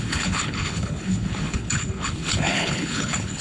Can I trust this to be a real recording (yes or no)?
no